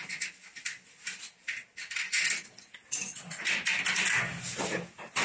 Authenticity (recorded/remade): recorded